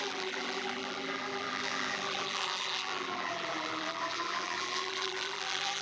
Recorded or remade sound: remade